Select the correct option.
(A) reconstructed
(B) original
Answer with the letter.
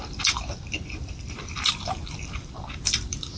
A